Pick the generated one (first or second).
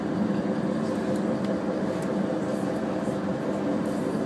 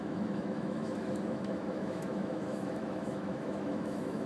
second